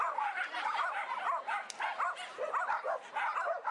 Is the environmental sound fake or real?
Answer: real